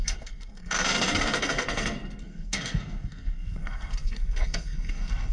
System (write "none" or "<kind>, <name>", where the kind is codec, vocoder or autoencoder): codec, SNAC